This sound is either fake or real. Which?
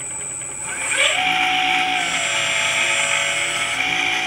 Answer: real